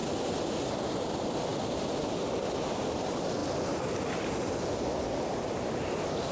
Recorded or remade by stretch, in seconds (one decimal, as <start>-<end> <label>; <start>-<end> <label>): 0.0-6.3 recorded